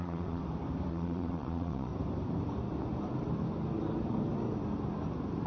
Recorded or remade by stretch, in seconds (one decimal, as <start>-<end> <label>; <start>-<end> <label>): 0.0-0.4 remade; 0.4-0.9 recorded; 0.9-1.9 remade; 1.9-5.5 recorded